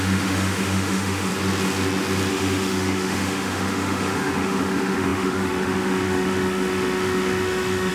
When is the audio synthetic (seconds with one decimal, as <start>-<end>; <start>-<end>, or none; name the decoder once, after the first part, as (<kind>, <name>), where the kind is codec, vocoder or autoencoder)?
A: 0.0-1.3 (autoencoder, DAC-VAE); 2.3-7.9